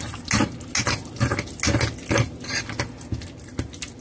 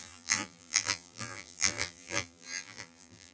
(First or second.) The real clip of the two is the first